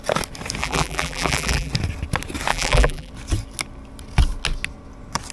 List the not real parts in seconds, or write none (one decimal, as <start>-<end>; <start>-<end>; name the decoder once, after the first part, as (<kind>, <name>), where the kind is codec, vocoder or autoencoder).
0.6-1.7 (vocoder, BigVGAN v2); 2.5-3.1